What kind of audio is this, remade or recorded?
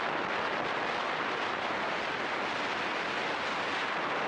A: recorded